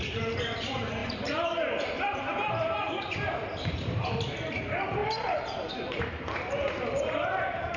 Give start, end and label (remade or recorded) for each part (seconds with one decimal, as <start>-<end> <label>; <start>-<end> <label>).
0.0-7.8 remade